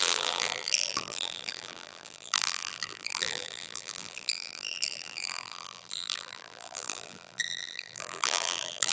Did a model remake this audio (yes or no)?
yes